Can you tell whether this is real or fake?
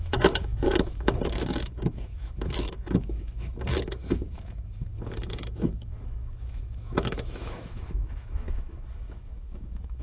fake